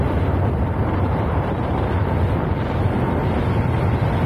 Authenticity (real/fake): real